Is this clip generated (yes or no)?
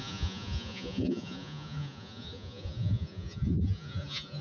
yes